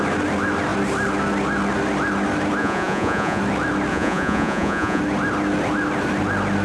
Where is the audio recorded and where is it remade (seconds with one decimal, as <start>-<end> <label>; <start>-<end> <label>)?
0.0-2.6 recorded; 2.6-3.4 remade; 3.4-3.9 recorded; 3.9-5.0 remade; 5.0-6.6 recorded